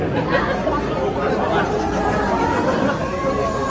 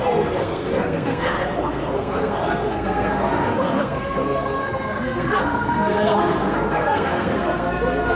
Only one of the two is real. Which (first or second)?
first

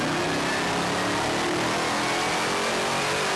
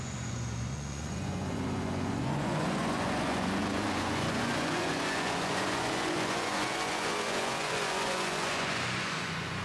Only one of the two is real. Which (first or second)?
first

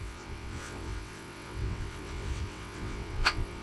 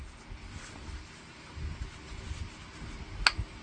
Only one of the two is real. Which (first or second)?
second